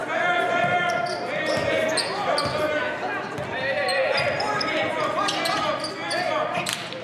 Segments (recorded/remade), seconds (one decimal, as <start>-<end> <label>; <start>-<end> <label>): 0.0-7.0 recorded